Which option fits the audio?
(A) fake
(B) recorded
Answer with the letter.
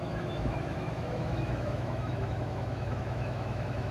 A